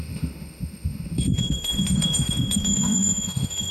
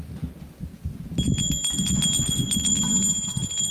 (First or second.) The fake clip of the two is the first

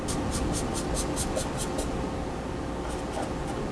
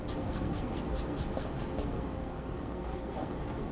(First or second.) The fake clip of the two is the second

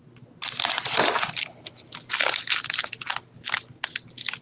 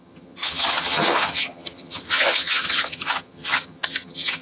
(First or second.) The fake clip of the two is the second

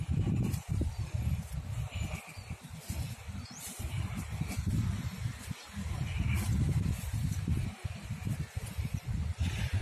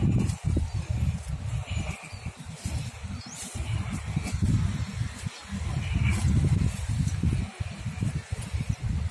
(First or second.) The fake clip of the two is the first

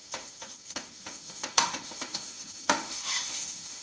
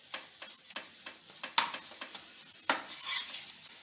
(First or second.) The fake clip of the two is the first